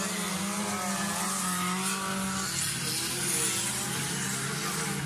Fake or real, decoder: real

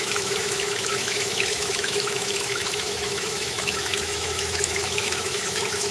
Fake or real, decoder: fake, autoencoder, DAC-VAE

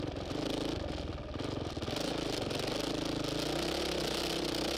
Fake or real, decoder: real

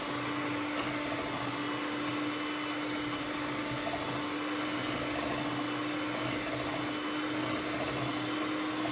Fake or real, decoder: real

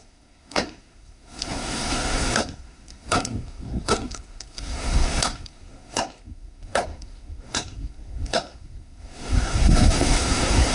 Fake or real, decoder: fake, codec, SNAC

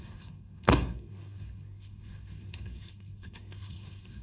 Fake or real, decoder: fake, codec, SNAC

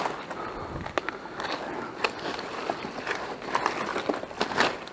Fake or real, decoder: real